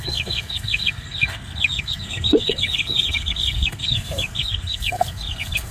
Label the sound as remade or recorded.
remade